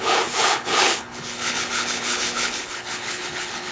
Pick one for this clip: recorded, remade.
remade